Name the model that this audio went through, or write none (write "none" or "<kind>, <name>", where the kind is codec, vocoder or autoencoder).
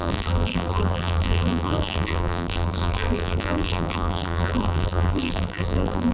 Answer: vocoder, BigVGAN v2